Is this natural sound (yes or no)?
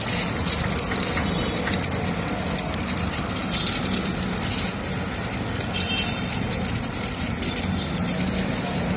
yes